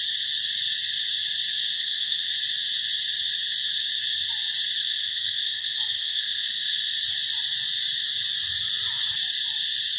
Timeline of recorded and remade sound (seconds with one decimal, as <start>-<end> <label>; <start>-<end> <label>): 0.0-1.7 recorded; 1.7-2.3 remade; 2.3-4.8 recorded; 4.8-6.9 remade; 6.9-10.0 recorded